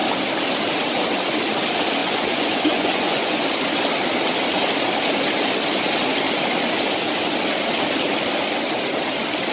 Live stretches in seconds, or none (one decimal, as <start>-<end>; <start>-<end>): 0.0-2.0; 3.4-9.5